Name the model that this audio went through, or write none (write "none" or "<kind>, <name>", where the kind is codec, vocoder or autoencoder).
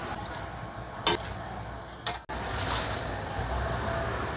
none